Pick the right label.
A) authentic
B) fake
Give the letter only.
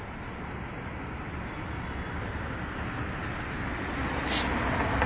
A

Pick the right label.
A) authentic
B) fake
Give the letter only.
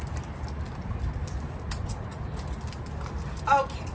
A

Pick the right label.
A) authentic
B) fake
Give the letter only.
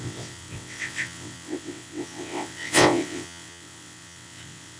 B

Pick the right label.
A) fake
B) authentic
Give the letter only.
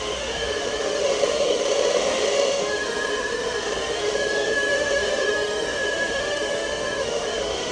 A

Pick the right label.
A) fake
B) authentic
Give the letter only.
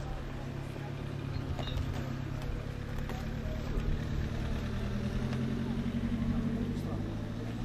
B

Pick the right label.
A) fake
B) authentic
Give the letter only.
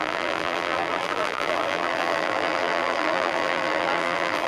A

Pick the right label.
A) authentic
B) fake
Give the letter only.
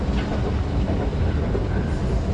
A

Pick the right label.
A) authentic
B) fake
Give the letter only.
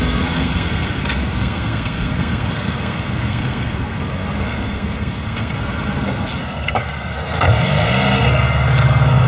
B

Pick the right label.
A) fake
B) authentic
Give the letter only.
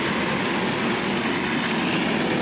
B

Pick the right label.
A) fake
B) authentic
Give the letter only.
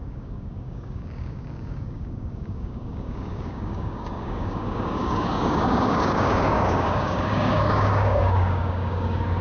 A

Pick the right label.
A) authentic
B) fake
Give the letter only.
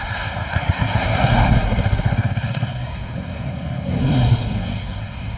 B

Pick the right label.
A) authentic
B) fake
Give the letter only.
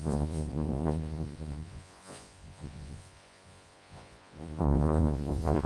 B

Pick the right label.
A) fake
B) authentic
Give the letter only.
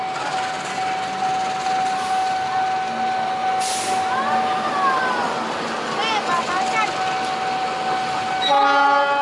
B